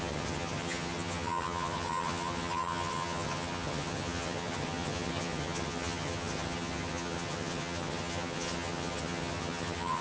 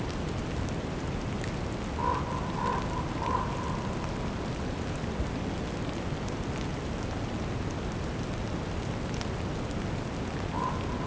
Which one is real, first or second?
second